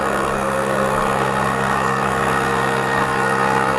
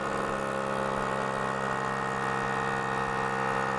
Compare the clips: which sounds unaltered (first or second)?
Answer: second